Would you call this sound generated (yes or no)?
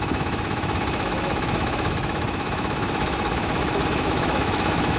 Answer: yes